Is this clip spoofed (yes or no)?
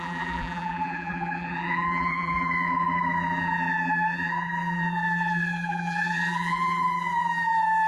yes